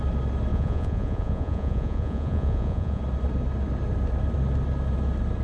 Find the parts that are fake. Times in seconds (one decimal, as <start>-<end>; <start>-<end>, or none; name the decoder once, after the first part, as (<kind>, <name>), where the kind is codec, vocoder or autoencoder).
0.5-3.0 (vocoder, Vocos)